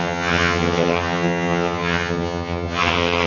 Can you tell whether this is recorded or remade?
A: remade